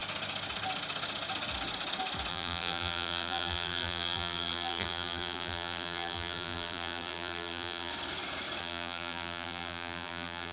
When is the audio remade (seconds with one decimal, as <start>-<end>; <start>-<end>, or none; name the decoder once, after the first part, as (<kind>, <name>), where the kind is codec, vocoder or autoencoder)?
2.3-7.9 (vocoder, BigVGAN v2); 8.6-10.5